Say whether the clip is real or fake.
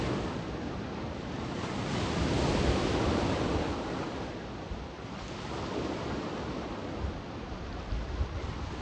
real